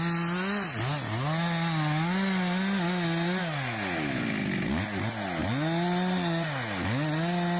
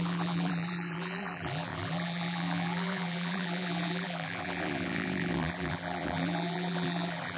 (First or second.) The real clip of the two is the first